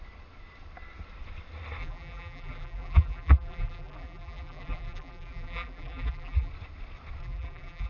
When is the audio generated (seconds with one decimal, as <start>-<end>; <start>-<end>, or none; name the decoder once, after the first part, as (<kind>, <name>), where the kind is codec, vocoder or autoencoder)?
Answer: 1.8-6.5 (vocoder, BigVGAN v2); 7.2-7.9